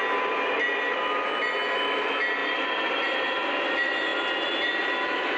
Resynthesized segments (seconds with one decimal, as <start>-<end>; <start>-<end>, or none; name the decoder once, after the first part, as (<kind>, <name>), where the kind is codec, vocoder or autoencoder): 2.4-3.5 (vocoder, BigVGAN v2)